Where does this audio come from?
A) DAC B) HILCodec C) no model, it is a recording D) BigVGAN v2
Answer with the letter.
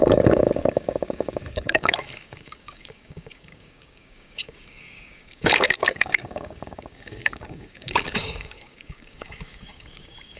A